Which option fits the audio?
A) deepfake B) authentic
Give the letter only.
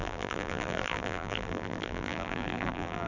A